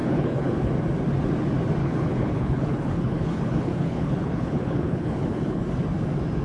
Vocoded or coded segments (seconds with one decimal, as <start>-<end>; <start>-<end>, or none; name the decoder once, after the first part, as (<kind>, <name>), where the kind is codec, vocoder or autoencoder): 0.0-0.7 (codec, HILCodec); 1.8-5.6